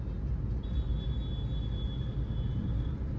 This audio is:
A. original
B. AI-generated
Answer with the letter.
A